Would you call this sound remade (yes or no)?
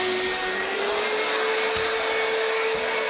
no